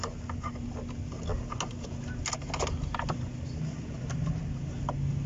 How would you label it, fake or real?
real